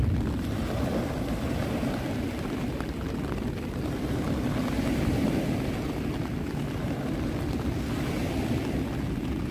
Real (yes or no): yes